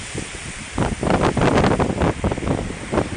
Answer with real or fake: real